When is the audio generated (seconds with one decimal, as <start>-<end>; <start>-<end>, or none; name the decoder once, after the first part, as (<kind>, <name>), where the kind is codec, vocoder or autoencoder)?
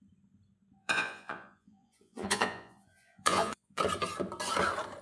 0.8-3.8 (vocoder, Vocos)